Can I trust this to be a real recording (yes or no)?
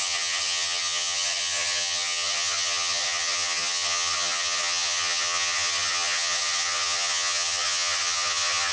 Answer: no